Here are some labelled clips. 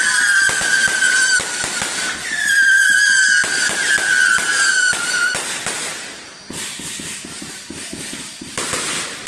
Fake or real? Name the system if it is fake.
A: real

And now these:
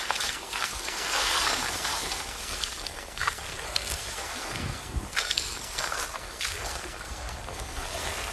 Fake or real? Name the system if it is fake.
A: fake, codec, SNAC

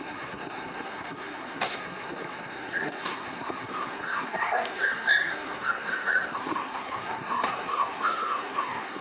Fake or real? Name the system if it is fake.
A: fake, codec, SNAC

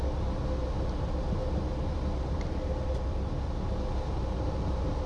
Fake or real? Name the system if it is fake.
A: real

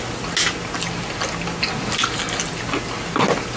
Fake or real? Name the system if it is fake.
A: real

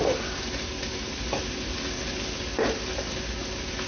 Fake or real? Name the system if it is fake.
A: real